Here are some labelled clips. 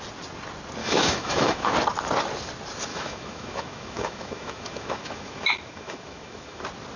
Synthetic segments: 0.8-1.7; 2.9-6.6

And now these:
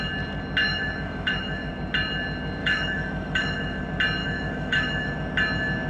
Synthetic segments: 0.6-1.7; 2.6-3.8; 4.2-5.1

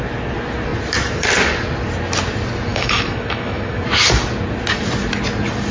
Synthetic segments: 2.7-3.8

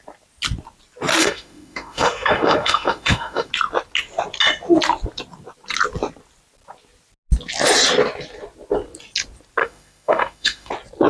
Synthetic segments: 1.2-3.5; 9.6-10.7

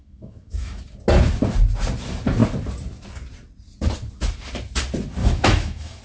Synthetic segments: 0.0-0.8; 5.2-6.0

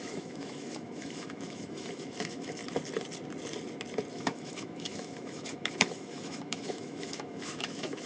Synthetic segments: 0.0-2.6; 4.1-8.1

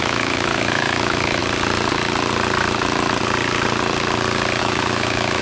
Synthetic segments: 0.0-1.4; 4.6-5.4